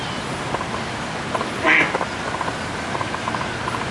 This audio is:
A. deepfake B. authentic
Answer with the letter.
B